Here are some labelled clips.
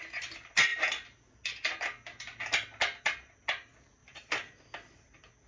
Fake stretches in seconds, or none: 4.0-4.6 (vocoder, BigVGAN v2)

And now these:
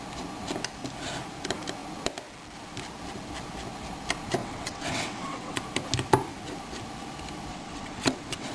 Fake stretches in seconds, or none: 4.4-5.6 (vocoder, WaveNeXt); 7.5-8.5